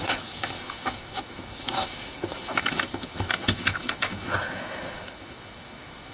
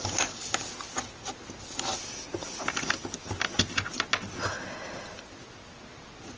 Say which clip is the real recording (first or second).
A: second